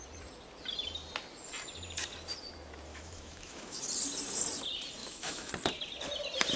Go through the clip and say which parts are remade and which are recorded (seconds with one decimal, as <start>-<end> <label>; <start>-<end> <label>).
0.0-2.9 recorded; 2.9-3.8 remade; 3.8-5.0 recorded; 5.0-5.5 remade; 5.5-6.6 recorded